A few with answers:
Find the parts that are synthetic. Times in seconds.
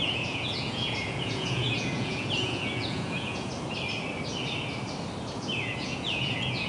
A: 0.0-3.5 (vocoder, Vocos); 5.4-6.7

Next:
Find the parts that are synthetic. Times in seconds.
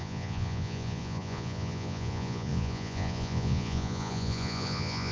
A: 0.0-5.1 (vocoder, Vocos)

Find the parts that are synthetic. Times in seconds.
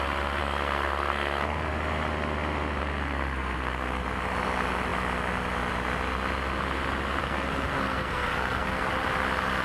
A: 0.4-1.7 (codec, SNAC); 2.8-4.0; 7.2-8.9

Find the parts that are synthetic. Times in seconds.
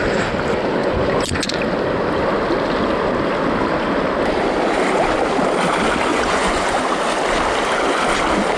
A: 0.8-1.6 (vocoder, Vocos); 6.1-6.8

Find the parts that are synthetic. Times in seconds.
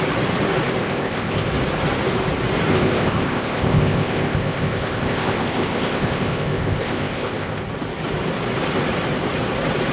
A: 0.8-1.5 (codec, ZipCodec); 2.7-7.6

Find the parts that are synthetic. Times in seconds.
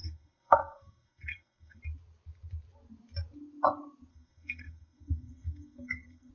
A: 0.0-1.8 (codec, SNAC); 4.1-6.3